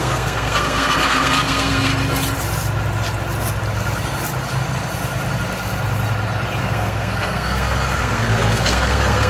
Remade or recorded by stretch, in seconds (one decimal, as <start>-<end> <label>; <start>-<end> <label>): 0.0-1.9 remade; 1.9-6.6 recorded; 6.6-9.3 remade

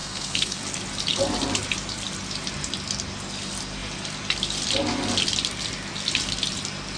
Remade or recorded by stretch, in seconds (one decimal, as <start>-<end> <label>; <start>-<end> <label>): 0.0-0.6 remade; 0.6-7.0 recorded

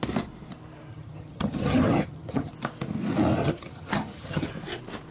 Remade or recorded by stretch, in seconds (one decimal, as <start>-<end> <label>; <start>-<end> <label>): 0.0-0.9 recorded; 0.9-2.5 remade; 2.5-3.4 recorded; 3.4-4.5 remade; 4.5-5.1 recorded

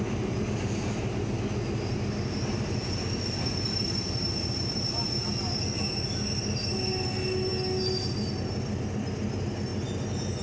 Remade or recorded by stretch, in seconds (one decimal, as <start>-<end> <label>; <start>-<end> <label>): 0.0-10.4 recorded

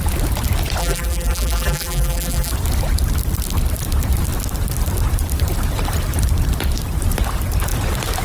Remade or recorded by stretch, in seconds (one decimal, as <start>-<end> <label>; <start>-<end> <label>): 0.0-0.8 recorded; 0.8-2.5 remade; 2.5-8.2 recorded

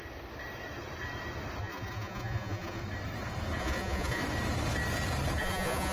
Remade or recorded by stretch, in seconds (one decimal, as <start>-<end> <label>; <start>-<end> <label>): 0.0-1.6 recorded; 1.6-2.8 remade; 2.8-3.6 recorded; 3.6-4.2 remade; 4.2-5.4 recorded; 5.4-5.9 remade

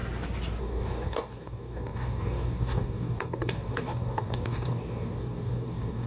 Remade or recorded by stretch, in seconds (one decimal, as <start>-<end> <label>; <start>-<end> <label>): 0.0-0.6 recorded; 0.6-6.1 remade